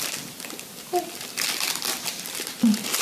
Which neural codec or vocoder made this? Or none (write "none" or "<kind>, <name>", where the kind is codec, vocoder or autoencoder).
none